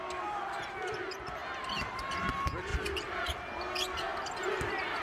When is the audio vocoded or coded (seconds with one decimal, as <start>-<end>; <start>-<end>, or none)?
2.7-3.2; 4.1-5.0